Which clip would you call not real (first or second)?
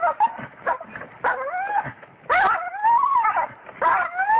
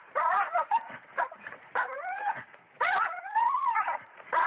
second